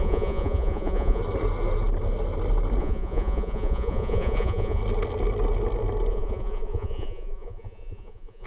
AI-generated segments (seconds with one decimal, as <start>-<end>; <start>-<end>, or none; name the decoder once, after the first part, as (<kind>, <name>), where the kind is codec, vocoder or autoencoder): 0.0-1.2 (vocoder, Vocos); 2.8-4.8; 6.1-8.5